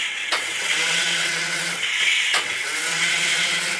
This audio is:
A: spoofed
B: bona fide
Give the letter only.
A